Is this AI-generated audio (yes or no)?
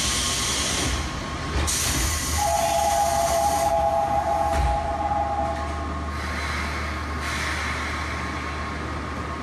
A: no